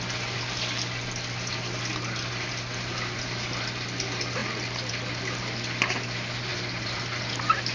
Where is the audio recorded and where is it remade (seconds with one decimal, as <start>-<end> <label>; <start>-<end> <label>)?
0.0-6.5 recorded; 6.5-7.0 remade; 7.0-7.7 recorded